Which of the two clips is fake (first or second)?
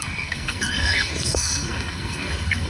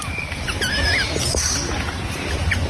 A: first